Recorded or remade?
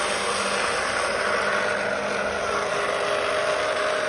recorded